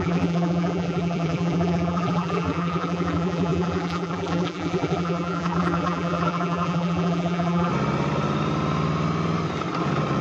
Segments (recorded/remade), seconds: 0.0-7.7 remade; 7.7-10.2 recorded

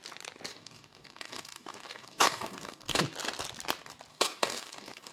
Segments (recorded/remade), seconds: 0.0-0.5 recorded; 0.5-3.0 remade; 3.0-4.1 recorded; 4.1-5.1 remade